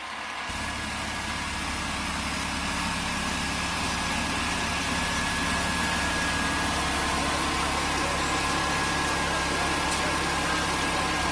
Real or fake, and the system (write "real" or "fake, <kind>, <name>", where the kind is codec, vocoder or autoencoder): real